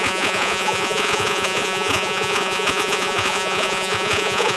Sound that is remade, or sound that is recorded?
remade